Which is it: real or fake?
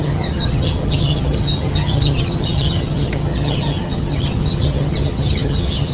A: fake